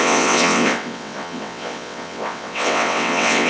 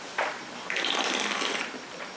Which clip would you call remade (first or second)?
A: first